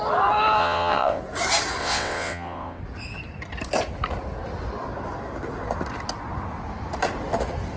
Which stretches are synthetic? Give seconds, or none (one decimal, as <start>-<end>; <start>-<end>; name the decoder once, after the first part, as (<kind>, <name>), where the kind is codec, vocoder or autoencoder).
0.6-1.2 (vocoder, WaveNeXt); 1.8-2.8